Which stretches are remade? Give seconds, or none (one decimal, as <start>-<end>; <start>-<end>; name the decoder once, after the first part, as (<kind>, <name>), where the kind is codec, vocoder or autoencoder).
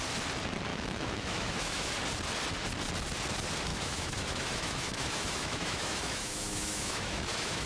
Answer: 0.7-1.9 (autoencoder, DAC-VAE); 3.7-7.7